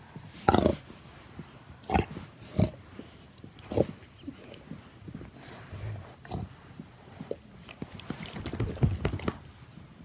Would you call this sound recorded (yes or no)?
yes